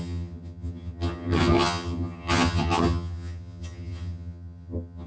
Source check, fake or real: fake